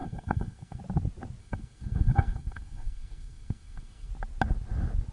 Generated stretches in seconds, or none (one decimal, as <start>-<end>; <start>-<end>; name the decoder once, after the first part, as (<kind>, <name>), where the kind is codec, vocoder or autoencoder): 0.0-0.8 (codec, SNAC); 1.4-4.1